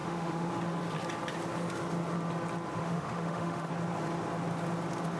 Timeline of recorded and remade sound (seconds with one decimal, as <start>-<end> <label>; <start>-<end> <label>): 0.0-0.5 remade; 0.5-2.8 recorded; 2.8-3.7 remade; 3.7-5.2 recorded